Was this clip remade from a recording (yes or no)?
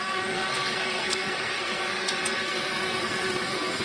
yes